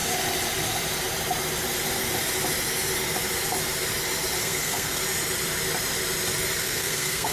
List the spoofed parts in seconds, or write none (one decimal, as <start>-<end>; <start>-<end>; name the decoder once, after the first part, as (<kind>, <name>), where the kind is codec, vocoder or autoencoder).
4.4-5.0 (codec, SNAC); 6.6-7.3

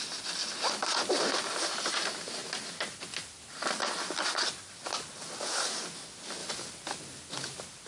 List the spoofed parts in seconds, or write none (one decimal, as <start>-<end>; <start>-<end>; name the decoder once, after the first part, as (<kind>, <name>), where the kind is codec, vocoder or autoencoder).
none